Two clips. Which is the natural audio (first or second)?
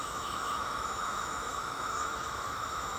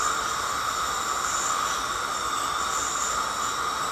second